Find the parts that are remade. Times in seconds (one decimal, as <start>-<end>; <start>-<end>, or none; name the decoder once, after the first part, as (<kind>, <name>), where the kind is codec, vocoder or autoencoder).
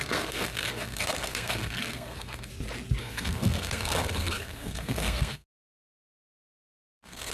0.0-2.5 (codec, SNAC); 3.0-7.3